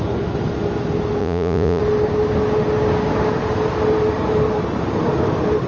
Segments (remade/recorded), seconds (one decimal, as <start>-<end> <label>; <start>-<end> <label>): 0.0-1.2 recorded; 1.2-1.8 remade; 1.8-5.7 recorded